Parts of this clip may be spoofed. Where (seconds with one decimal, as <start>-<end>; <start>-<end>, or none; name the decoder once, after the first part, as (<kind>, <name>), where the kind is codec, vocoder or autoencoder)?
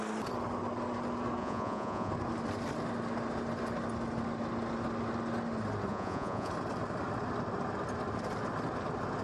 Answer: 1.4-2.1 (vocoder, Vocos); 5.9-6.5